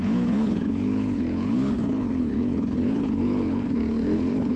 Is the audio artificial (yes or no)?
yes